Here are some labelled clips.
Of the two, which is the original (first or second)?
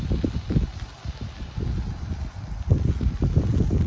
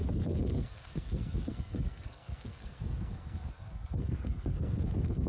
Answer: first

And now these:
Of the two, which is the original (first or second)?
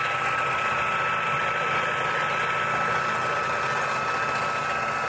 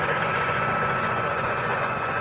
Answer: first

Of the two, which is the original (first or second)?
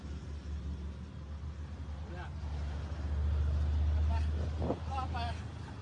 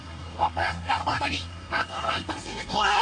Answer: first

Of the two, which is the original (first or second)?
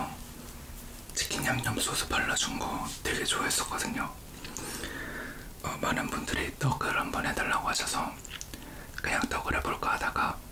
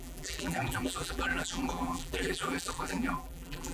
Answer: first